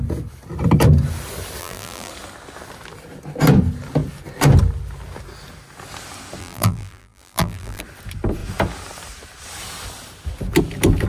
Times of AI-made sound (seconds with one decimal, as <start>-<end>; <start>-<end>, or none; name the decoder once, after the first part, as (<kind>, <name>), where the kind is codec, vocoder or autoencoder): 1.6-2.1 (vocoder, BigVGAN v2); 6.4-7.8